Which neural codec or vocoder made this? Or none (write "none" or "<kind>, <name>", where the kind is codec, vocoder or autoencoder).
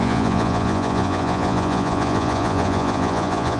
vocoder, Vocos